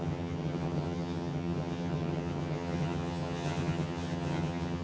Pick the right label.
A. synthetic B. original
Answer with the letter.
A